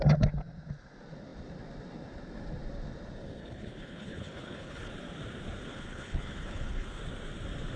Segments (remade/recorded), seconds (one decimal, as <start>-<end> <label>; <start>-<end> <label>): 0.0-3.4 recorded; 3.4-4.9 remade; 4.9-5.7 recorded; 5.7-7.0 remade; 7.0-7.8 recorded